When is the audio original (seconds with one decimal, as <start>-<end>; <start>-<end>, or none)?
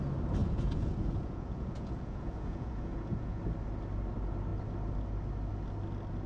0.0-0.4; 3.4-6.3